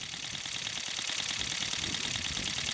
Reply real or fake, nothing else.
real